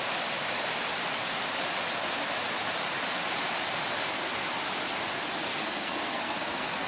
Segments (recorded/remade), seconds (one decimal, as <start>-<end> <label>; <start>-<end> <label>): 0.0-5.5 recorded; 5.5-6.9 remade

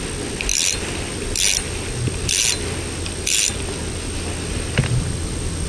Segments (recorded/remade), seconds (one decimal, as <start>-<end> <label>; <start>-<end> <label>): 0.0-5.7 recorded

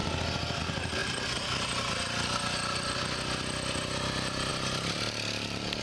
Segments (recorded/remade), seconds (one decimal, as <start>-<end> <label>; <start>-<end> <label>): 0.0-5.8 recorded

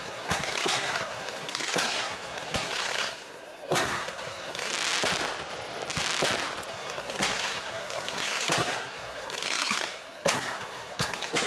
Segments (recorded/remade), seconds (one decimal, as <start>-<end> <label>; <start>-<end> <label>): 0.0-4.7 remade; 4.7-6.7 recorded; 6.7-11.5 remade

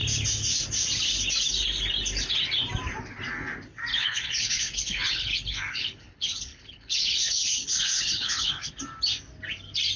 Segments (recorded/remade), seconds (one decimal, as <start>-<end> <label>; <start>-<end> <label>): 0.0-3.9 recorded; 3.9-8.7 remade; 8.7-10.0 recorded

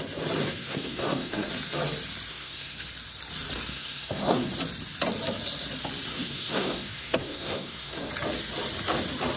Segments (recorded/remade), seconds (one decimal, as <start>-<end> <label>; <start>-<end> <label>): 0.0-0.4 recorded; 0.4-1.5 remade; 1.5-2.3 recorded; 2.3-2.9 remade; 2.9-3.7 recorded; 3.7-4.5 remade; 4.5-6.1 recorded; 6.1-8.1 remade; 8.1-9.4 recorded